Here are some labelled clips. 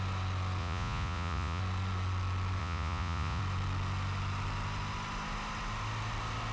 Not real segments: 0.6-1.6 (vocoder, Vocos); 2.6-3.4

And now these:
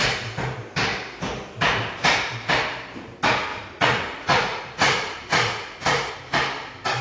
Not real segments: 3.5-6.1 (vocoder, Vocos)

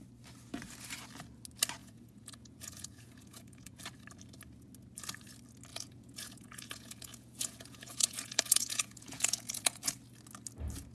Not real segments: 1.8-3.8 (vocoder, Vocos); 5.7-9.9

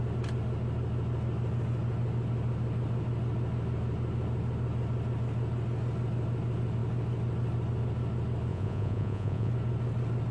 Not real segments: 8.5-9.5 (vocoder, Vocos)

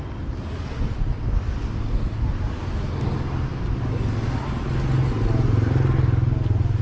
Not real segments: none

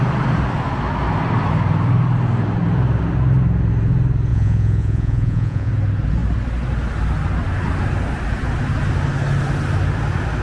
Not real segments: 4.3-5.7 (vocoder, Vocos)

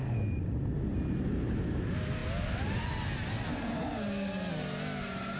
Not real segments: none

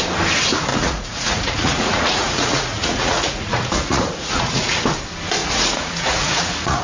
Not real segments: 0.7-4.8 (vocoder, Vocos); 5.4-6.8